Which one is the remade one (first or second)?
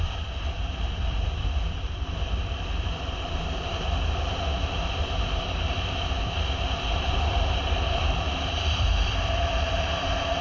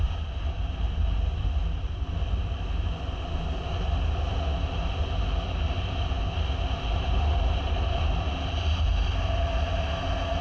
first